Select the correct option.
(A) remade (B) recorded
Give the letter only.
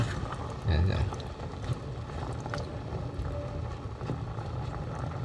B